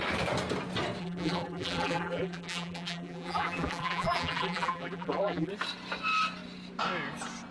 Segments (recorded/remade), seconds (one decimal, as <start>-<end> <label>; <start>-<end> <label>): 0.0-1.0 recorded; 1.0-5.5 remade; 5.5-7.5 recorded